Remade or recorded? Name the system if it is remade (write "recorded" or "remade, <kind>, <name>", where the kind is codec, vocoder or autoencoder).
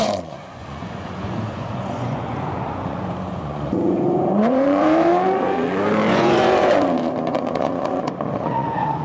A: remade, vocoder, Vocos